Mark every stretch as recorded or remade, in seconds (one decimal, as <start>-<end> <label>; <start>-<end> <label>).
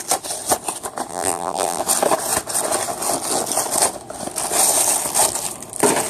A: 0.0-1.1 recorded; 1.1-1.8 remade; 1.8-6.1 recorded